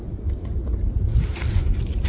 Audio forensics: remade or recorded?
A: remade